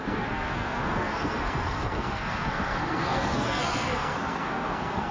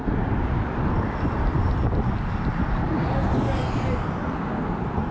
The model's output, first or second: first